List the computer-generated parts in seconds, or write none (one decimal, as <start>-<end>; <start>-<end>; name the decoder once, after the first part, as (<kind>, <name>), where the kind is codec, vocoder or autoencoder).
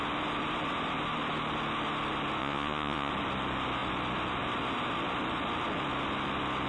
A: 2.4-3.1 (vocoder, Vocos)